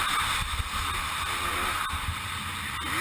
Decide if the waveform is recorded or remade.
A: recorded